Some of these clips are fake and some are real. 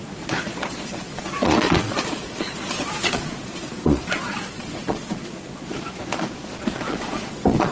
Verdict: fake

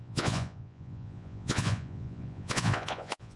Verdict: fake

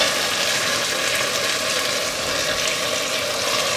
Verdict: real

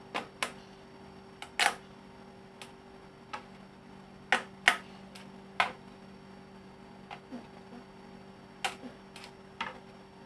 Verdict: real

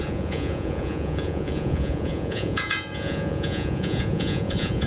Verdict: fake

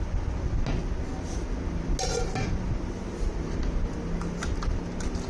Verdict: real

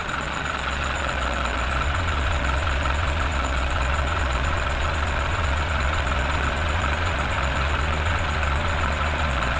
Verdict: fake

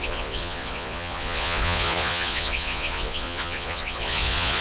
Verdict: fake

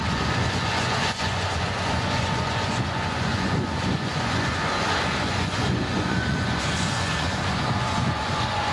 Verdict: fake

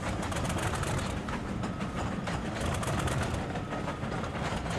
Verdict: real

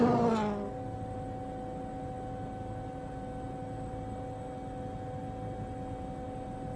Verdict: real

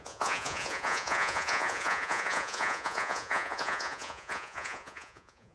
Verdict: fake